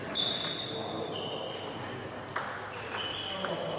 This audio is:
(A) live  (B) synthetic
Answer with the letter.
A